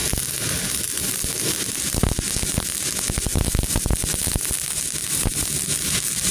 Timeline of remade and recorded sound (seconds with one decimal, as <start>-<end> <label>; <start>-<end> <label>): 0.0-5.0 recorded; 5.0-6.3 remade